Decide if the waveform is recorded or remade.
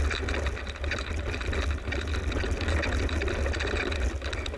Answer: recorded